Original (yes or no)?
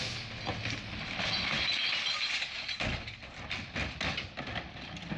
yes